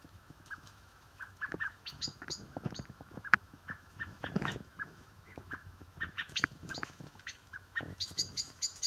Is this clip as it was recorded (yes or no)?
no